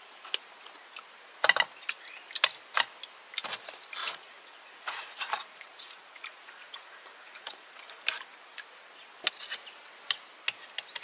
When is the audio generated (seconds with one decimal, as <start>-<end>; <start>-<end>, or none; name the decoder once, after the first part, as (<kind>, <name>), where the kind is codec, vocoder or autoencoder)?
4.0-8.0 (vocoder, Vocos)